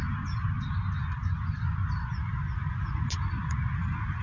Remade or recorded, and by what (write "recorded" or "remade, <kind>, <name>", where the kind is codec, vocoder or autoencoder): recorded